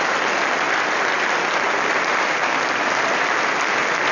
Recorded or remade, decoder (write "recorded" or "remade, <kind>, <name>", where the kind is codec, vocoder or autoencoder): recorded